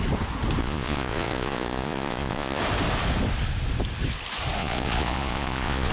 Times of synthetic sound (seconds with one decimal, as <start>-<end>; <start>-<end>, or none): 0.6-2.6; 4.6-5.9